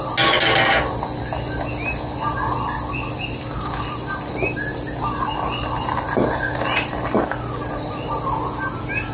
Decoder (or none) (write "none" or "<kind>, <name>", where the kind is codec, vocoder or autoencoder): none